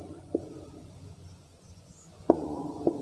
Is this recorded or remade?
remade